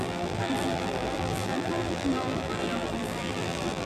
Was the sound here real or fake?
fake